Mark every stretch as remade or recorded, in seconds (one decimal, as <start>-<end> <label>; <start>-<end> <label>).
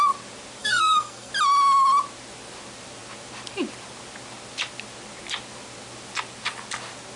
0.0-0.6 recorded; 0.6-1.3 remade; 1.3-7.2 recorded